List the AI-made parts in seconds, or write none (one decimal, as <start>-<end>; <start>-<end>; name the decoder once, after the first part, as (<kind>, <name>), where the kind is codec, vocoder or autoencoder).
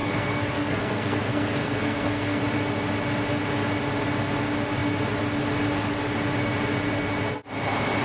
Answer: 0.0-2.4 (codec, SNAC)